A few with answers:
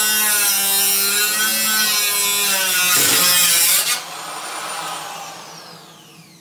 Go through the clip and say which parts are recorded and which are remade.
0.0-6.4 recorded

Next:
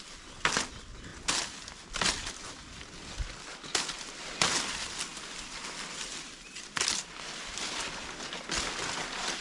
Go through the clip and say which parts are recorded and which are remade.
0.0-9.4 recorded

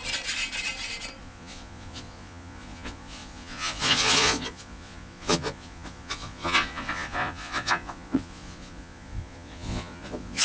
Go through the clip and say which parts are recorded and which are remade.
0.0-1.2 recorded; 1.2-10.4 remade

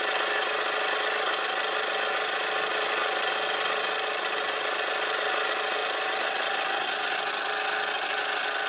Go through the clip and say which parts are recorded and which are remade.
0.0-8.7 recorded

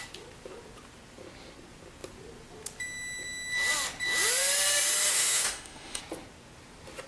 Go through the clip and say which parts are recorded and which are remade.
0.0-5.1 recorded; 5.1-6.0 remade; 6.0-7.1 recorded